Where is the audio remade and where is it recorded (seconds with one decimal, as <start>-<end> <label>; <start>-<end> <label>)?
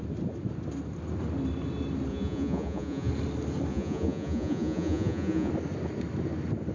0.0-2.1 recorded; 2.1-3.1 remade; 3.1-3.7 recorded; 3.7-5.5 remade; 5.5-6.7 recorded